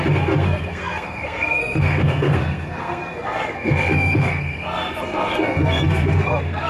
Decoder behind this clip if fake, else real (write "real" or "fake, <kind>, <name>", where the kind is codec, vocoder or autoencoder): fake, codec, SNAC